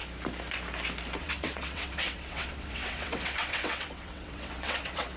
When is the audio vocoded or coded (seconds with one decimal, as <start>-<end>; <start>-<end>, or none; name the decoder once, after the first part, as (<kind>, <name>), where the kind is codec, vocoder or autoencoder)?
1.2-5.2 (vocoder, WaveNeXt)

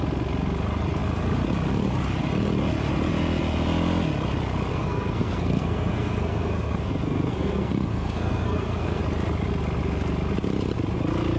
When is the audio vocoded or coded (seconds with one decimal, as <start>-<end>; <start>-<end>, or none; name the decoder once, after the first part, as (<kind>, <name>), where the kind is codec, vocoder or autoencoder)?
4.7-9.0 (codec, SNAC)

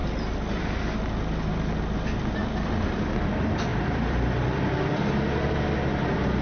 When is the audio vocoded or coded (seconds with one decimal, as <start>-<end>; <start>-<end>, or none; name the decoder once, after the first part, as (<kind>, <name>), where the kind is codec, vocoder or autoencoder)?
0.0-1.5 (vocoder, BigVGAN v2); 3.7-4.6

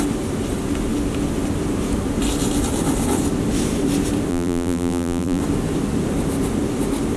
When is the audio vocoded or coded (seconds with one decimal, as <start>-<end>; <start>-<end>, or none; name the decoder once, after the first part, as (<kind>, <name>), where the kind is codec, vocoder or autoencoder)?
4.3-5.4 (vocoder, BigVGAN v2)

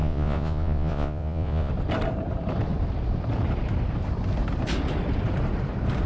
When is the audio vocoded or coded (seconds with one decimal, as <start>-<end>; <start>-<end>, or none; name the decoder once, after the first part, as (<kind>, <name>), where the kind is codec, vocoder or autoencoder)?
0.0-1.7 (vocoder, Vocos)

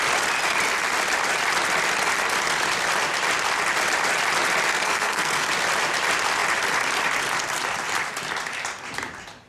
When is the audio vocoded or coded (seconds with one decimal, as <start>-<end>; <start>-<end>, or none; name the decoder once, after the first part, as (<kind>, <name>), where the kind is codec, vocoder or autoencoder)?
4.7-5.5 (codec, SNAC)

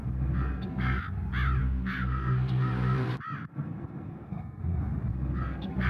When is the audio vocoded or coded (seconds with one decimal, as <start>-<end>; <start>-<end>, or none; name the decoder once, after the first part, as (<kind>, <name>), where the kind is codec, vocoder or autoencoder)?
0.0-1.0 (codec, SNAC); 1.6-2.7; 3.5-4.6; 5.1-5.9